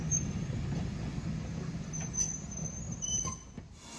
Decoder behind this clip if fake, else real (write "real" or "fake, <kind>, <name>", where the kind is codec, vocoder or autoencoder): real